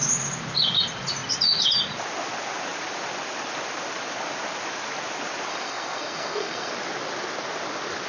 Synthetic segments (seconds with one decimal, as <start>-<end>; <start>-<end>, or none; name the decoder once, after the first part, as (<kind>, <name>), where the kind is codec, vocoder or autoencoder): 5.5-6.7 (codec, SNAC)